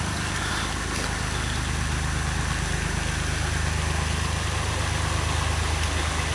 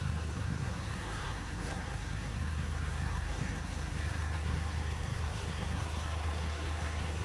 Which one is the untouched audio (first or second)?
first